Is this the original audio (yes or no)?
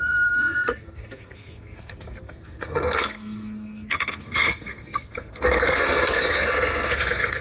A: no